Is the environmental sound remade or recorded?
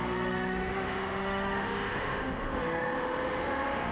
remade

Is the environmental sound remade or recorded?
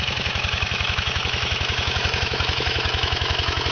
remade